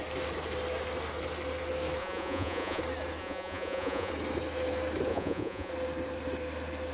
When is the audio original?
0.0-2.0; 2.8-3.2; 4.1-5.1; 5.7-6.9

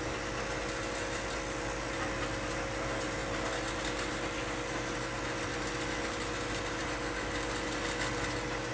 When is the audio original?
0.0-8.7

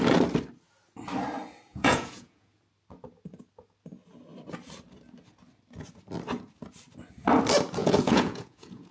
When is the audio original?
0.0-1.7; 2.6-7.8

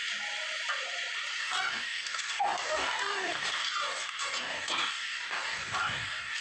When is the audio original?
0.0-1.4

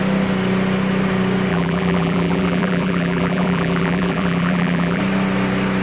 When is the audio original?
0.0-1.5; 5.0-5.8

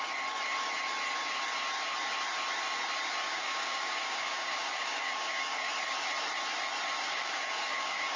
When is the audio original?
0.0-3.2; 5.7-7.1